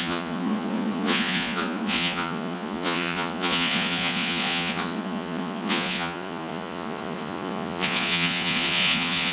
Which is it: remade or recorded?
remade